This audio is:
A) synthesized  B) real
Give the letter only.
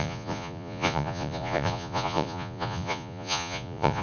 A